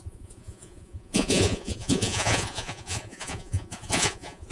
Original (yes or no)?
no